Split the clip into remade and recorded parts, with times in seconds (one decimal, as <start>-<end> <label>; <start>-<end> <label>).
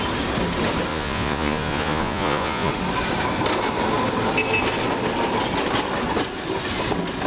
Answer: 0.0-0.9 recorded; 0.9-2.7 remade; 2.7-7.3 recorded